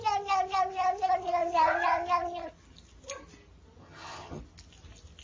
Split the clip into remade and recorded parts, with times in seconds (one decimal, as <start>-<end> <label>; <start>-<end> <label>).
0.0-3.8 recorded; 3.8-4.4 remade; 4.4-5.2 recorded